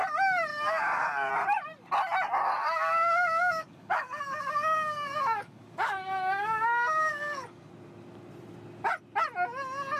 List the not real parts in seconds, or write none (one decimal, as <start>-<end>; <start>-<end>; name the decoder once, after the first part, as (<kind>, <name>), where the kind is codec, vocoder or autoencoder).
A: 0.5-1.3 (codec, DAC); 2.6-7.7